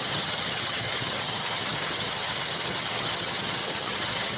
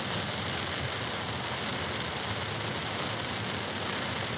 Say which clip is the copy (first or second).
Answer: first